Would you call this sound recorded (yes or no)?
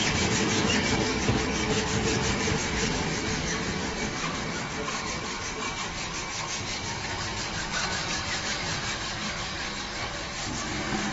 no